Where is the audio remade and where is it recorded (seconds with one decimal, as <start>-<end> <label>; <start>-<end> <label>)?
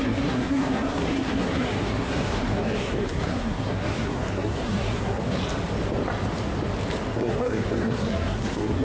0.0-5.4 remade; 5.4-7.1 recorded; 7.1-8.8 remade